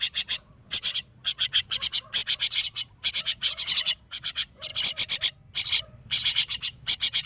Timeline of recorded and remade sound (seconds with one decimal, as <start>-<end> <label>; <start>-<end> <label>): 0.0-4.7 remade; 4.7-5.8 recorded; 5.8-7.3 remade